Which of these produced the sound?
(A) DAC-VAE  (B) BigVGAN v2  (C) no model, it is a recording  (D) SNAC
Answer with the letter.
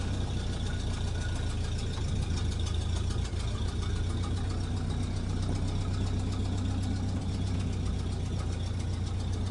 C